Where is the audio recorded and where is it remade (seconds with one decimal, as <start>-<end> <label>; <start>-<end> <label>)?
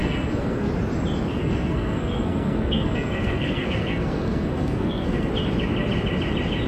0.0-0.7 remade; 0.7-1.3 recorded; 1.3-5.3 remade; 5.3-6.7 recorded